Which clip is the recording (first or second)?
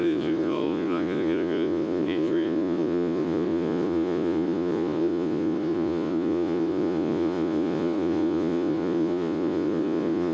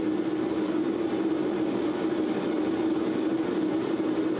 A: second